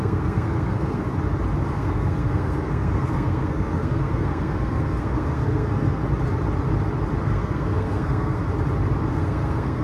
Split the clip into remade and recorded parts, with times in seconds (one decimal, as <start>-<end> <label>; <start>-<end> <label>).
0.0-1.1 remade; 1.1-1.7 recorded; 1.7-6.0 remade; 6.0-7.2 recorded; 7.2-8.4 remade; 8.4-9.1 recorded; 9.1-9.8 remade